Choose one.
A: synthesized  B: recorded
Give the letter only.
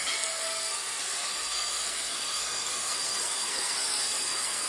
A